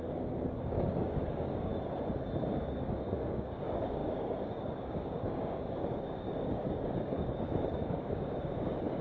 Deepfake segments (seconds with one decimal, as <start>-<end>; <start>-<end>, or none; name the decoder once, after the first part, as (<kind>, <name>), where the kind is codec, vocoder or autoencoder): 0.0-1.7 (codec, DAC); 2.5-9.0